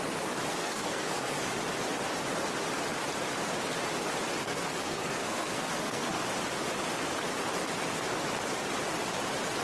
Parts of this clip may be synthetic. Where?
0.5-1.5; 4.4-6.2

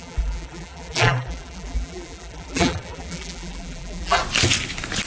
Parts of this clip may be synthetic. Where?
0.0-4.2

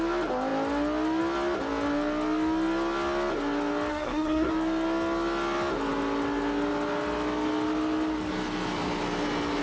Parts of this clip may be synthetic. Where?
3.9-4.5

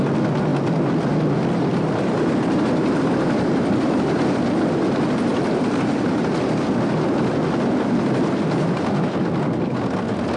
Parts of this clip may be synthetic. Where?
1.7-4.7; 5.3-6.1

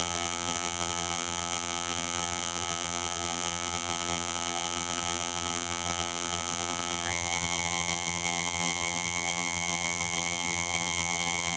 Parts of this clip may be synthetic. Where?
0.0-11.6

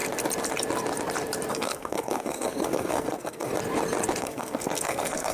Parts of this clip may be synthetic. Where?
1.5-3.5; 4.2-5.3

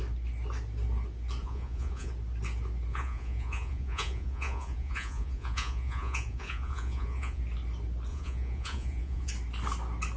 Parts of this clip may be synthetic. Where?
1.4-2.1; 2.9-7.4; 8.1-9.3

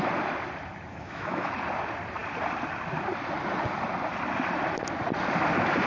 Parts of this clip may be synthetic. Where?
0.9-1.5